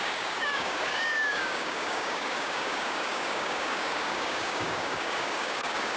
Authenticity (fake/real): fake